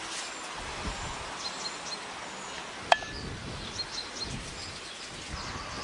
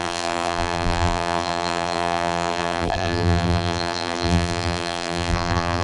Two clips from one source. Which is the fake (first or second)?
second